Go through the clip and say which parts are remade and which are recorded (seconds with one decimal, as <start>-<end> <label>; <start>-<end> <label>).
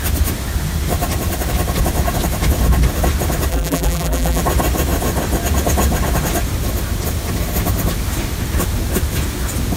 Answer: 0.0-3.5 recorded; 3.5-4.4 remade; 4.4-9.8 recorded